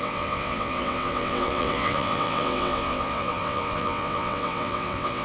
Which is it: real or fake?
fake